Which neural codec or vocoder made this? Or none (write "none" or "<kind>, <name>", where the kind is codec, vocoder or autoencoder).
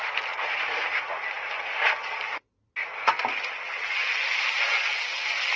none